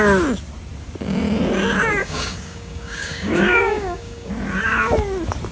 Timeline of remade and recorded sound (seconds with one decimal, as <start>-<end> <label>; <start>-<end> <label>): 0.0-2.0 recorded; 2.0-4.3 remade; 4.3-5.5 recorded